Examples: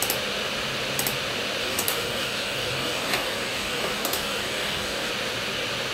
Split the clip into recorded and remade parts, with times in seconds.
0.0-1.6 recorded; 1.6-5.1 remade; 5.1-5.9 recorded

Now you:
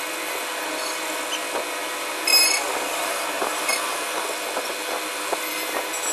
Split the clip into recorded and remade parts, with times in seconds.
0.0-6.1 recorded

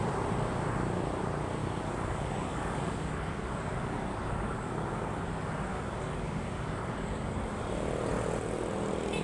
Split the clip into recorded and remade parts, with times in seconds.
0.0-1.6 recorded; 1.6-5.2 remade; 5.2-5.7 recorded; 5.7-7.5 remade; 7.5-9.2 recorded